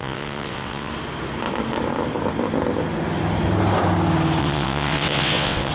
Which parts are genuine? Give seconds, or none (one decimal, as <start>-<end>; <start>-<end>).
0.9-4.4